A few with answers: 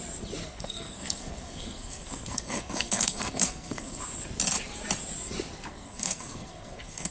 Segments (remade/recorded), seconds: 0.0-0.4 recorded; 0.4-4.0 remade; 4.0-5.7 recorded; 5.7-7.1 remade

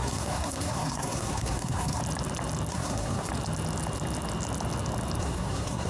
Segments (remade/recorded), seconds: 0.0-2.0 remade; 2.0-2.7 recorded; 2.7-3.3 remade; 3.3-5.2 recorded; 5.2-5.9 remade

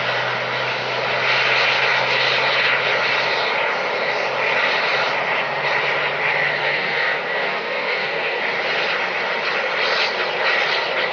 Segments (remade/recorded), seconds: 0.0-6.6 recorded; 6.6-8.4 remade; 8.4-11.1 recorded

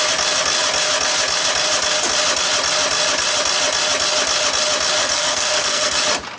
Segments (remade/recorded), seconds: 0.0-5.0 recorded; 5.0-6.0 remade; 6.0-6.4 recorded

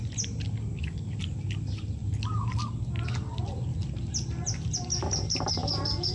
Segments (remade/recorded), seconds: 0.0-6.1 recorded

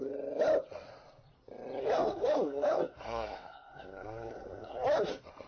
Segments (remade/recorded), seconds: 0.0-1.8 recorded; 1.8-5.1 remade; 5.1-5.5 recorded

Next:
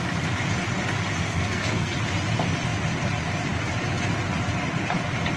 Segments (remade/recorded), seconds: 0.0-1.2 recorded; 1.2-1.9 remade; 1.9-5.4 recorded